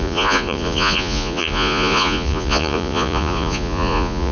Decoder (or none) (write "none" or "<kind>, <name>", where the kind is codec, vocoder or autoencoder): vocoder, Vocos